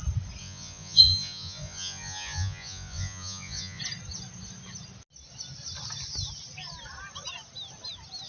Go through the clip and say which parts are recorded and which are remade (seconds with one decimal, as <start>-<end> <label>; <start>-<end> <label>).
0.0-0.4 recorded; 0.4-3.8 remade; 3.8-8.3 recorded